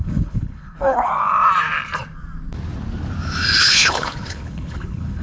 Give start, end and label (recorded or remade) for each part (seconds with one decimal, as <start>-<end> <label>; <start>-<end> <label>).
0.0-1.1 remade; 1.1-3.6 recorded; 3.6-5.2 remade